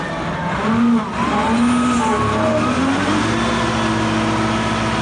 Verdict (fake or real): real